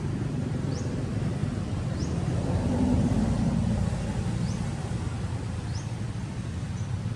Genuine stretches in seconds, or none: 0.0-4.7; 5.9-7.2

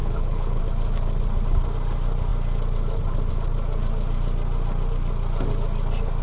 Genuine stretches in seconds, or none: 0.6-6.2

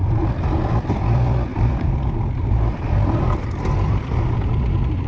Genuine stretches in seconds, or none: 0.0-1.5; 4.6-5.1

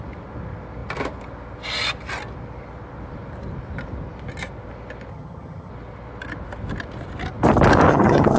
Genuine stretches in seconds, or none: 0.0-5.1; 5.7-7.9

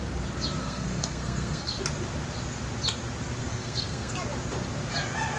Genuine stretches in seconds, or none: 0.0-0.6; 1.8-3.4; 4.1-5.4

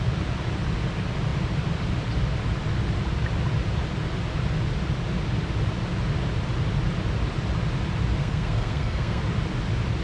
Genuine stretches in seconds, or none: 0.0-8.2; 9.2-10.0